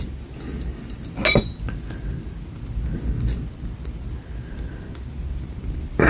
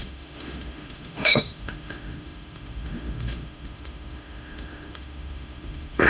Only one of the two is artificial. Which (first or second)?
second